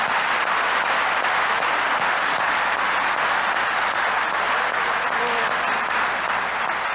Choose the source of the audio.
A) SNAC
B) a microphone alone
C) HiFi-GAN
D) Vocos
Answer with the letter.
B